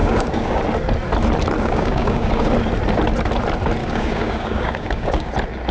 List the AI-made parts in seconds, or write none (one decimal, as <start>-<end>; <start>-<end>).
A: 0.0-0.6; 1.6-2.5; 3.8-5.3